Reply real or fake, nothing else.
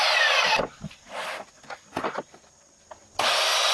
real